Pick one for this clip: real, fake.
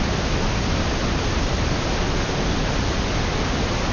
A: real